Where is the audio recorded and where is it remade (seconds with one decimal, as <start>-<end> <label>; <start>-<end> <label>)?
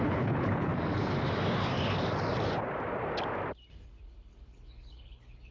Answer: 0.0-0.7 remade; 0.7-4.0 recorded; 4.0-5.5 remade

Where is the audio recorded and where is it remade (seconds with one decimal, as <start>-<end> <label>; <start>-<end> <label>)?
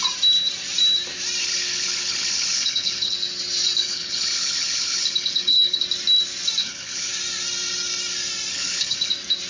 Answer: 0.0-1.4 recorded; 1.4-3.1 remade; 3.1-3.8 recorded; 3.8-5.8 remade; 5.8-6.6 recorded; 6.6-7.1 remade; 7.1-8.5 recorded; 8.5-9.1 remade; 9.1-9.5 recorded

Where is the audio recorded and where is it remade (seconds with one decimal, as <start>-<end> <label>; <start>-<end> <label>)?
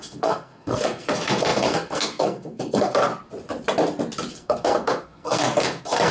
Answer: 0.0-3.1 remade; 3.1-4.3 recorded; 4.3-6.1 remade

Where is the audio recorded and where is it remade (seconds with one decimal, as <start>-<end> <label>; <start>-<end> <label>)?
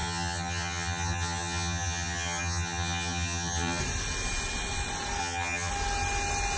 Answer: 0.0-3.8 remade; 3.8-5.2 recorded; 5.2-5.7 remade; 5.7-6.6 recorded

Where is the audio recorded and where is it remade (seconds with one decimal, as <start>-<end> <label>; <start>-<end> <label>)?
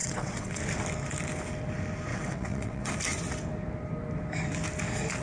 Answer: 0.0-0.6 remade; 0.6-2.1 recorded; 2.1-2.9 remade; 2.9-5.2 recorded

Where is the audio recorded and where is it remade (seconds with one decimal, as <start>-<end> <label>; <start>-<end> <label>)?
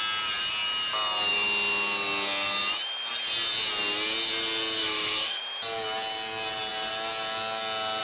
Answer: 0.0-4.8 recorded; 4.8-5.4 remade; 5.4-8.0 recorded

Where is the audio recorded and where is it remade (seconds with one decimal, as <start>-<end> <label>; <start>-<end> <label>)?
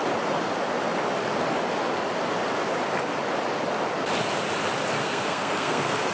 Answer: 0.0-5.0 recorded; 5.0-6.1 remade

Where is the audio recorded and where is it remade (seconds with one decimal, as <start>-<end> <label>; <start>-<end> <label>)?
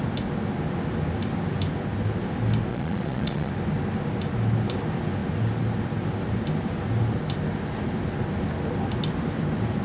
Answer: 0.0-2.7 recorded; 2.7-3.5 remade; 3.5-9.8 recorded